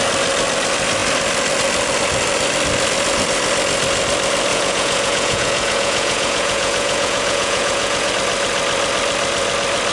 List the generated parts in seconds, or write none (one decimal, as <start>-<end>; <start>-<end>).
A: 4.5-8.1